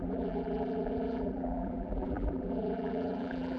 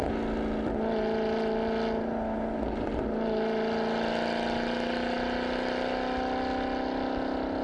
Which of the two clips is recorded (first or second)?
second